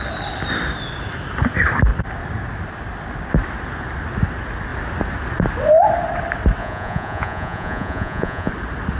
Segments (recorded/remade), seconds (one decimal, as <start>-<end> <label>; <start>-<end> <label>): 0.0-6.6 recorded; 6.6-8.5 remade; 8.5-9.0 recorded